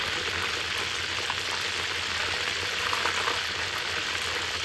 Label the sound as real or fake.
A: real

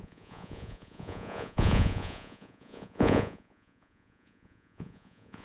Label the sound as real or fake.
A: fake